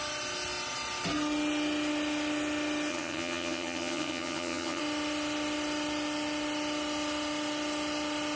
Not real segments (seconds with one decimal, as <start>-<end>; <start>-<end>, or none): 2.9-4.8